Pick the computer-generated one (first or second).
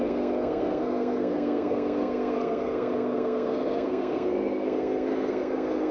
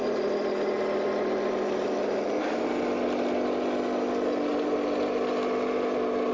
first